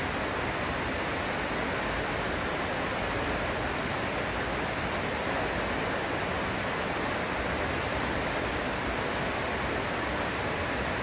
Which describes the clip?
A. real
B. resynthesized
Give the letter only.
A